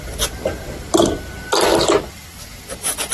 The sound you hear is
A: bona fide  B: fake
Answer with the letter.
A